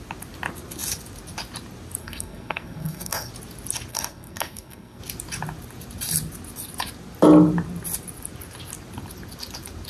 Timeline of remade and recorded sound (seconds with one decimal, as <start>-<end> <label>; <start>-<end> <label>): 0.0-2.0 recorded; 2.0-3.3 remade; 3.3-3.9 recorded; 3.9-5.0 remade; 5.0-9.9 recorded

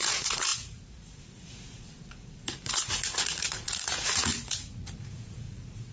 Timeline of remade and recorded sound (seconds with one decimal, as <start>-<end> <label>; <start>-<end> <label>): 0.0-5.9 remade

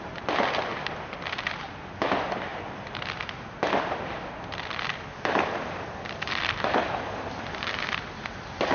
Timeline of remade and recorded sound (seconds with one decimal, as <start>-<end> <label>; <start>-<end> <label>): 0.0-8.7 remade

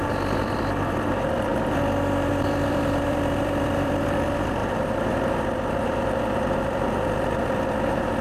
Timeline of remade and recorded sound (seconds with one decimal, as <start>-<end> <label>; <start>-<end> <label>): 0.0-1.5 remade; 1.5-2.3 recorded; 2.3-8.2 remade

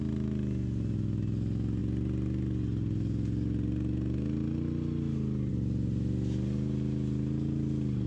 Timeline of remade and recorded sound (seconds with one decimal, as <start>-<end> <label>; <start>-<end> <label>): 0.0-8.1 recorded

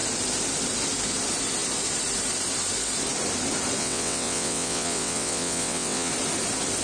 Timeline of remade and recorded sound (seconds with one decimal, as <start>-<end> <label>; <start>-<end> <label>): 0.0-3.8 recorded; 3.8-6.1 remade; 6.1-6.8 recorded

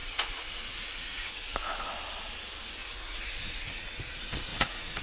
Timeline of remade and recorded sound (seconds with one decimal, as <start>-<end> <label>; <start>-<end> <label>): 0.0-1.9 remade; 1.9-2.8 recorded; 2.8-4.0 remade; 4.0-4.5 recorded; 4.5-5.0 remade